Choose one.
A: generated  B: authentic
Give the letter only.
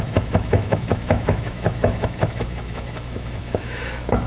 A